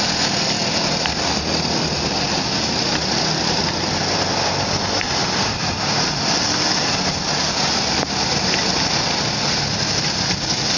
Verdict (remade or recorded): recorded